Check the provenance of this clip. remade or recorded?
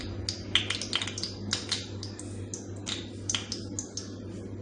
recorded